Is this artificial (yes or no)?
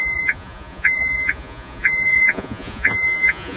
yes